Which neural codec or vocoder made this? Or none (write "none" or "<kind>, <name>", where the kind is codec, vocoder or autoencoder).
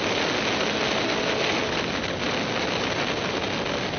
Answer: none